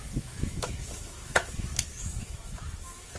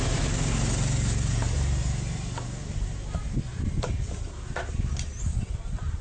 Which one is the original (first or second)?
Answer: second